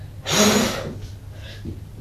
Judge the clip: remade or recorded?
recorded